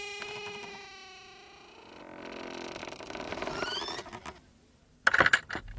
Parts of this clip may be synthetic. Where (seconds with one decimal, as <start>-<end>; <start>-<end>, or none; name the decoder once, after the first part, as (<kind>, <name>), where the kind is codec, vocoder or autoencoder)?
2.8-3.5 (vocoder, BigVGAN v2)